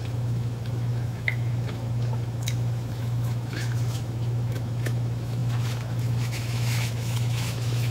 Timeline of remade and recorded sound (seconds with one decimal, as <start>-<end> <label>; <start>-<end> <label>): 0.0-7.9 remade